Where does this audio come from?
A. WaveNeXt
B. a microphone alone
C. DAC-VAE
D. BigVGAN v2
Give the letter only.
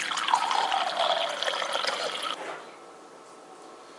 B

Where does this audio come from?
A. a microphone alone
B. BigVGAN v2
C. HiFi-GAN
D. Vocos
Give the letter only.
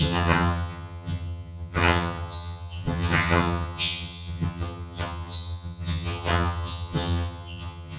C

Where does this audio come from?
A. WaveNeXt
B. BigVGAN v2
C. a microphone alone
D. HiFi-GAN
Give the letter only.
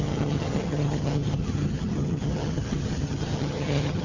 D